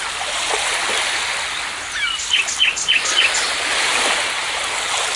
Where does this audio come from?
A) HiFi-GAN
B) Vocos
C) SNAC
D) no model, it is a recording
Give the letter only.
D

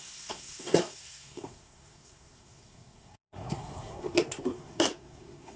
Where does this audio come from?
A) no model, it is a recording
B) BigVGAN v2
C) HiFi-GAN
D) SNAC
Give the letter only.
D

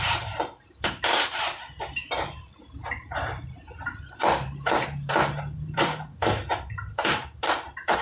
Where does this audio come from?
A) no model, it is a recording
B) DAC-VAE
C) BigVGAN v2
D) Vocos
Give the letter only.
C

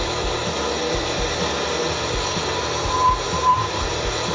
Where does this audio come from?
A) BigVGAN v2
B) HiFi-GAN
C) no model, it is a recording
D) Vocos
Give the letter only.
C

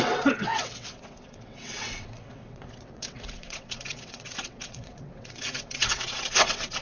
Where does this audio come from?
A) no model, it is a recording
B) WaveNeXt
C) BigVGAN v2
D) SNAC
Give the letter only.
B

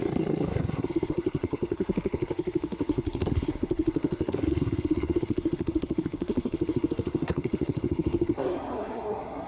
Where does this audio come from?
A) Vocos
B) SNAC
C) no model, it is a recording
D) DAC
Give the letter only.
B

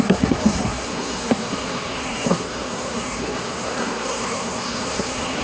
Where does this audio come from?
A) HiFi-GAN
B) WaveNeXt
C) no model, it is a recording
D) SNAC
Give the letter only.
D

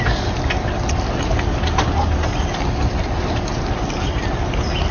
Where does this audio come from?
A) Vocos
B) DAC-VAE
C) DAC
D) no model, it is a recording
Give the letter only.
D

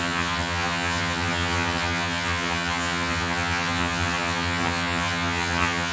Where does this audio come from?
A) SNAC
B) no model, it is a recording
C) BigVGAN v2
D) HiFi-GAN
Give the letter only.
D